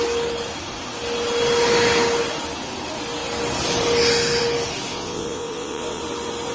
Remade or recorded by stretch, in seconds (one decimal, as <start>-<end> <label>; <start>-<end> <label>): 0.0-4.9 recorded; 4.9-6.0 remade; 6.0-6.5 recorded